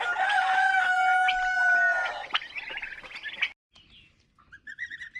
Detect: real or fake real